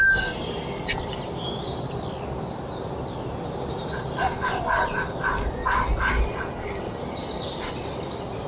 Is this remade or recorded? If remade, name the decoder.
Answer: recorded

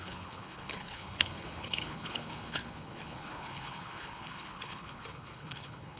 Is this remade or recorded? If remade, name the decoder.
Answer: remade, codec, HILCodec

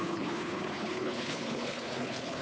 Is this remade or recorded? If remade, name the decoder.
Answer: remade, codec, HILCodec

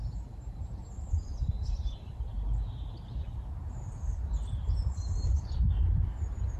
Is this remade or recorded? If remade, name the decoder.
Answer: remade, vocoder, BigVGAN v2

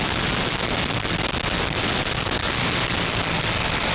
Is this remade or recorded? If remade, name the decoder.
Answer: recorded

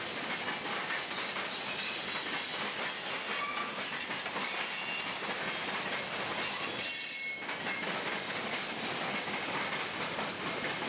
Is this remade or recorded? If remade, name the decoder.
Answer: recorded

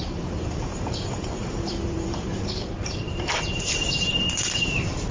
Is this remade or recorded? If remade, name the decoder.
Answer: remade, vocoder, BigVGAN v2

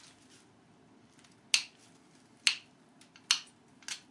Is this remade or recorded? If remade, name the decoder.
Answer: recorded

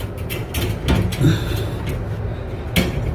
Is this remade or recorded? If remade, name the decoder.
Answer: recorded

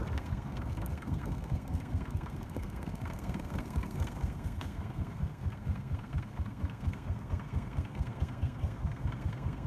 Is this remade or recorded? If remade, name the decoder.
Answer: remade, codec, SNAC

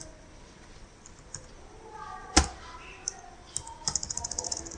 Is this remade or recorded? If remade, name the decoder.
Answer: recorded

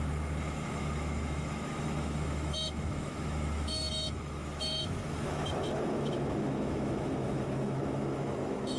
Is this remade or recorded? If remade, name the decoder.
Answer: remade, autoencoder, DAC-VAE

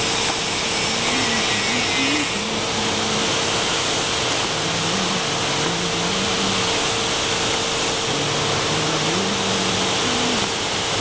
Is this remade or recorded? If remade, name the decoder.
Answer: recorded